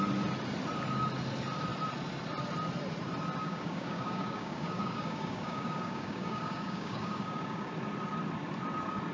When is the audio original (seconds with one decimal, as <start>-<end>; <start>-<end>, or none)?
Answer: 0.0-3.4; 7.7-9.1